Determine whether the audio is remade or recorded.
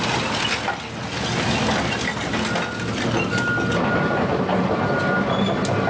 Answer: recorded